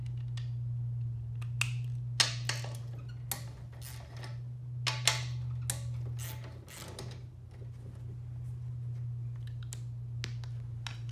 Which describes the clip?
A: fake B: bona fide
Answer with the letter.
B